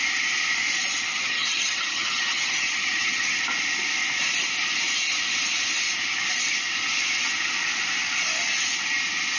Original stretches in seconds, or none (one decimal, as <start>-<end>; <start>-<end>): 0.0-1.1; 3.4-9.4